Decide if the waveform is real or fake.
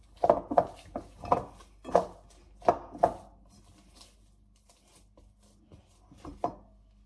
real